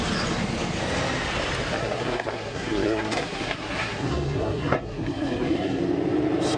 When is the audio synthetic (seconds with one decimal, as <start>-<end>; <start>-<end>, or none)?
1.8-5.8